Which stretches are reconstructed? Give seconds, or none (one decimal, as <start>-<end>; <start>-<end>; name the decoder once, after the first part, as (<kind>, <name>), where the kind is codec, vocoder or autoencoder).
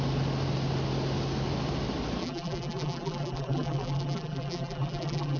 2.2-5.4 (vocoder, BigVGAN v2)